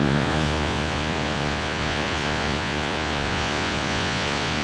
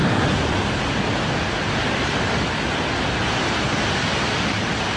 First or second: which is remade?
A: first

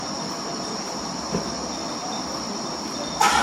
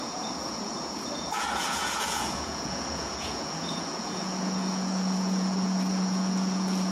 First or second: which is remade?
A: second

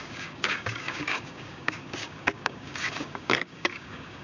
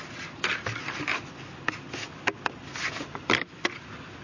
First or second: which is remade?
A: first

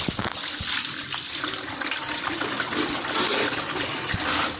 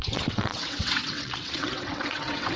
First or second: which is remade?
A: second